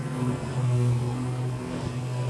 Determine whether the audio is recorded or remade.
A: remade